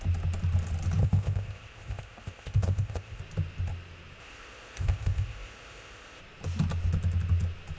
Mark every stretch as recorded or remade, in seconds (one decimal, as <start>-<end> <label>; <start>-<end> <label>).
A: 0.0-1.0 recorded; 1.0-3.2 remade; 3.2-4.2 recorded; 4.2-6.2 remade; 6.2-7.8 recorded

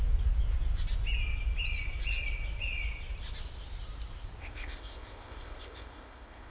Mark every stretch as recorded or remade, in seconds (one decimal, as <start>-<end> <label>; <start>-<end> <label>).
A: 0.0-4.4 recorded; 4.4-6.5 remade